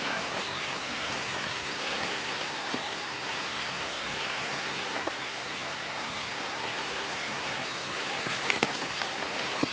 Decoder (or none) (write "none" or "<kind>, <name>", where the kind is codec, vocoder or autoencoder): codec, SNAC